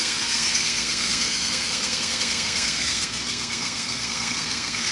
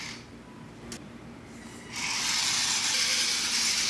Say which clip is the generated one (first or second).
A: first